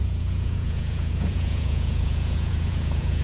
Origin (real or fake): fake